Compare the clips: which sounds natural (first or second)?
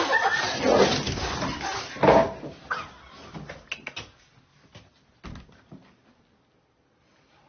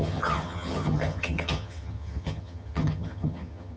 first